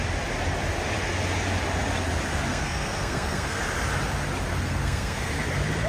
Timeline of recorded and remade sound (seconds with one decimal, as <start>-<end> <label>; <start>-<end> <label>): 0.0-2.5 recorded; 2.5-3.6 remade; 3.6-4.5 recorded; 4.5-5.3 remade; 5.3-5.9 recorded